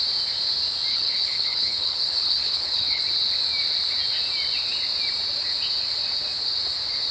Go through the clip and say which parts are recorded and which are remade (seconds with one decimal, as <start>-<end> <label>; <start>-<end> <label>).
0.0-0.9 recorded; 0.9-3.0 remade; 3.0-7.1 recorded